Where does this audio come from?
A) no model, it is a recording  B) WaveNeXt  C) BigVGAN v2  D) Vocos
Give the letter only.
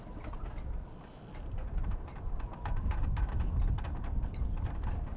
C